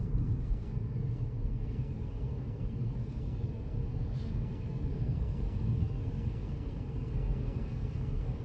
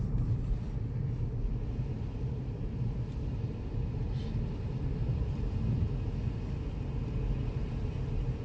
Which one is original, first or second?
second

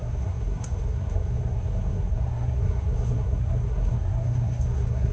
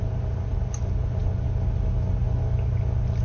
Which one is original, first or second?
second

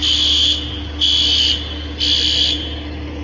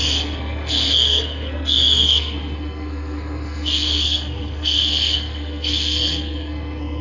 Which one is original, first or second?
first